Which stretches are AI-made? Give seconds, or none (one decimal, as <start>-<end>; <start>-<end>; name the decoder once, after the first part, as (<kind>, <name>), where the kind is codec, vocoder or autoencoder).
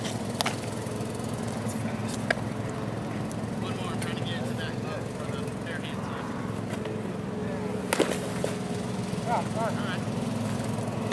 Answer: none